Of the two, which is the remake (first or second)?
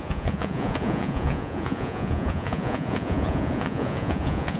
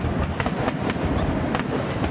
first